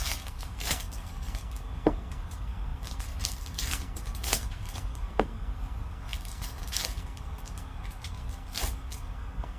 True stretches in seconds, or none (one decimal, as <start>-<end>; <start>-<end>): none